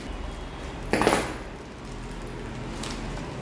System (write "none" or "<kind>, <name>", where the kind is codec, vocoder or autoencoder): none